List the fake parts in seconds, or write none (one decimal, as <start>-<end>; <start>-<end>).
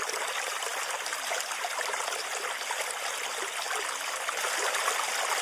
none